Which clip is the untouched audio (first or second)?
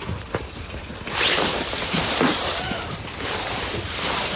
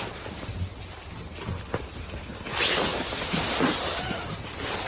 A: second